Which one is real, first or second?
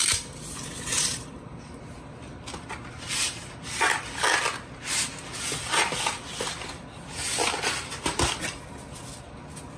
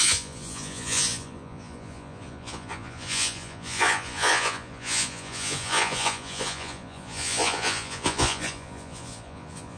first